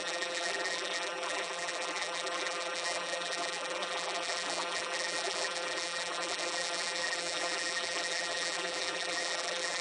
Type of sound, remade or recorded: remade